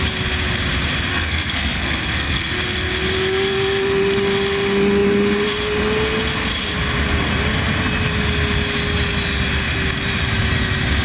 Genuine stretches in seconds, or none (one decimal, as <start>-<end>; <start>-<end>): 0.0-1.1; 2.5-11.0